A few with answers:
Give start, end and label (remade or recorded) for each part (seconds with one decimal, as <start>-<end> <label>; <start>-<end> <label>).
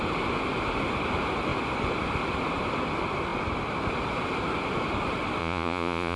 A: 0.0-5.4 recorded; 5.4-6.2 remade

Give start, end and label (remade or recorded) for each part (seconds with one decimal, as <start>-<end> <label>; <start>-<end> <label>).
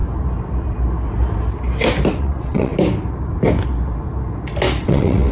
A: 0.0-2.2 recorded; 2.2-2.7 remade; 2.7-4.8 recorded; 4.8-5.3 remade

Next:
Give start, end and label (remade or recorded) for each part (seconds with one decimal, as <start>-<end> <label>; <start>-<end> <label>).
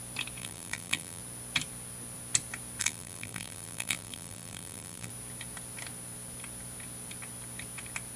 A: 0.0-0.4 recorded; 0.4-1.2 remade; 1.2-2.8 recorded; 2.8-5.1 remade; 5.1-8.2 recorded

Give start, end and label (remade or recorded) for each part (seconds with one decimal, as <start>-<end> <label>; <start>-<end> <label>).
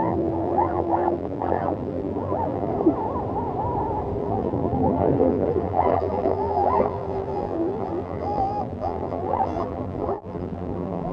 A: 0.0-2.7 remade; 2.7-4.2 recorded; 4.2-11.1 remade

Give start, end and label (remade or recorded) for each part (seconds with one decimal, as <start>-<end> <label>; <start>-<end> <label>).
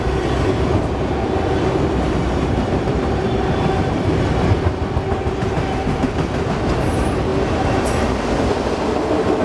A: 0.0-2.2 recorded; 2.2-4.1 remade; 4.1-9.4 recorded